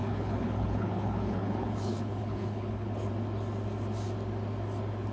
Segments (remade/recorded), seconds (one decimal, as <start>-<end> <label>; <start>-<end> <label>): 0.0-3.1 remade; 3.1-5.1 recorded